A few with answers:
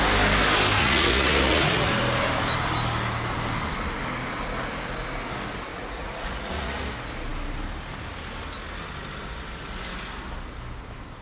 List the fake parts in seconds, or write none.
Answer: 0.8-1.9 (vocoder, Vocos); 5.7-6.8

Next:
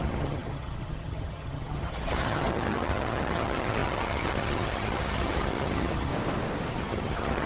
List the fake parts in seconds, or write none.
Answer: 0.0-6.1 (vocoder, HiFi-GAN); 6.7-7.5

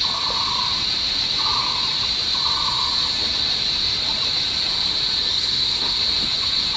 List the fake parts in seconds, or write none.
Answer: 5.3-6.0 (codec, SNAC)

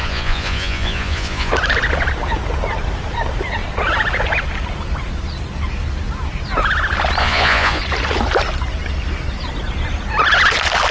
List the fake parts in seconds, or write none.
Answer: 0.0-1.5 (vocoder, Vocos); 7.2-7.8

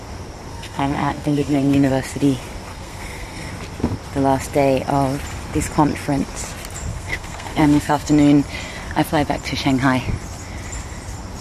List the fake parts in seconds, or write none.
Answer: 0.5-1.9 (codec, SNAC); 2.7-3.5; 6.9-8.1